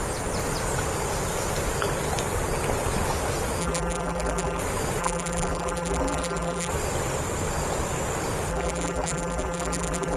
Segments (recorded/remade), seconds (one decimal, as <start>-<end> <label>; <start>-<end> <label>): 0.0-3.6 recorded; 3.6-4.6 remade; 4.6-5.0 recorded; 5.0-6.7 remade; 6.7-8.5 recorded; 8.5-10.2 remade